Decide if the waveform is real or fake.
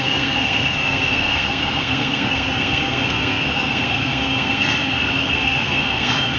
fake